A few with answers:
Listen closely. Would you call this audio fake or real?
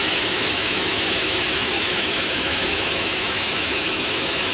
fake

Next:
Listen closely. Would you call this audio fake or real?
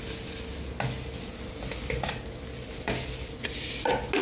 real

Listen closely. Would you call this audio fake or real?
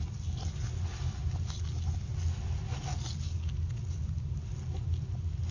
real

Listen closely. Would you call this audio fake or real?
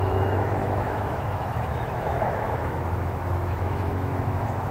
fake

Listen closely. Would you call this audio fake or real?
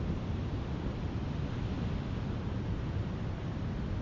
real